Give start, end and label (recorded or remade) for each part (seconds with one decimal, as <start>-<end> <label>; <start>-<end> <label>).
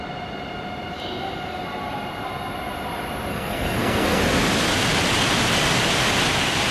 0.0-3.3 recorded; 3.3-4.2 remade; 4.2-6.7 recorded